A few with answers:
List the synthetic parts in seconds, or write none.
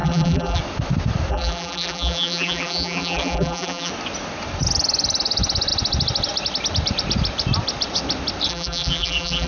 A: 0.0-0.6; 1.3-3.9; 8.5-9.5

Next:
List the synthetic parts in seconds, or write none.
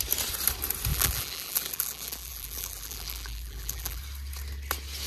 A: 0.9-4.0